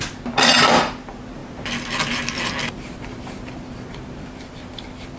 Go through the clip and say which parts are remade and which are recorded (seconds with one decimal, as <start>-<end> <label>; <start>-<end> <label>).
0.0-5.2 recorded